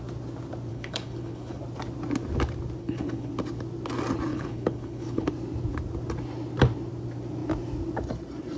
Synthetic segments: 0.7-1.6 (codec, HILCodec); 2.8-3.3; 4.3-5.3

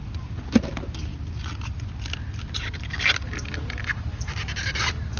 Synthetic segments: none

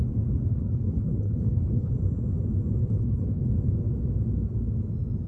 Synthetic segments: 0.5-1.9 (codec, HILCodec); 2.8-3.5

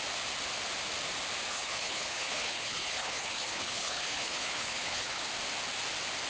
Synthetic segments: 1.5-5.3 (codec, HILCodec)

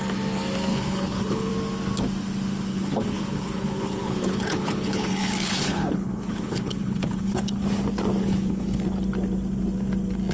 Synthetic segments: 0.7-1.5 (codec, HILCodec); 2.7-7.3; 8.2-8.8

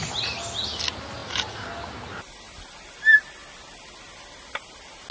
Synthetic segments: none

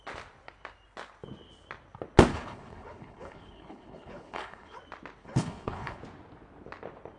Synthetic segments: 2.3-4.8 (codec, HILCodec); 5.2-6.0